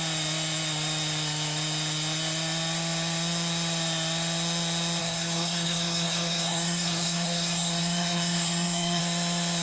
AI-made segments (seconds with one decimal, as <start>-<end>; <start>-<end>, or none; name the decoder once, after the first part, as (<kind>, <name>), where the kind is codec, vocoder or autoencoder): 5.0-9.0 (codec, SNAC)